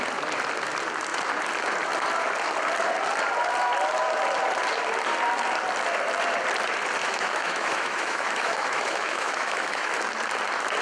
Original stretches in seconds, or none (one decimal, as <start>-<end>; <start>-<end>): 0.0-7.0; 10.0-10.8